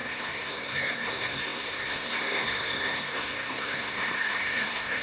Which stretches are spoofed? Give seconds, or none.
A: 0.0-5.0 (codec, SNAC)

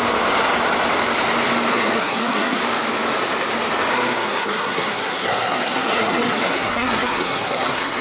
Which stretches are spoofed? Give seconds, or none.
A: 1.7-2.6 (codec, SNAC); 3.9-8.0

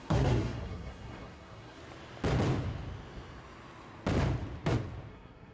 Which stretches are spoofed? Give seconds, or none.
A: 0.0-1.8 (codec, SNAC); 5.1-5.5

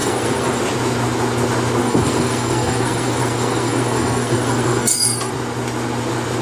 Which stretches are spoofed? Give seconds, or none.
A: 0.0-0.6 (codec, SNAC); 1.8-5.3

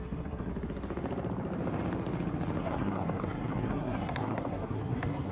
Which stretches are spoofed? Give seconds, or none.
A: 0.0-0.5 (codec, SNAC); 2.6-5.3